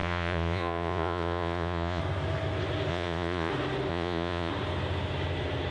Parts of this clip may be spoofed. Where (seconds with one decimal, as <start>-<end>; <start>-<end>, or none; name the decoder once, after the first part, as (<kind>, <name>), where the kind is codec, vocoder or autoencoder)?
0.0-2.0 (vocoder, Vocos); 2.9-3.5; 3.9-4.5